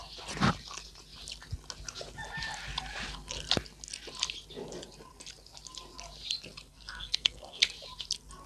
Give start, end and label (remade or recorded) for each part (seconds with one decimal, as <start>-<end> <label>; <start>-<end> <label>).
0.0-6.7 recorded; 6.7-7.6 remade; 7.6-8.5 recorded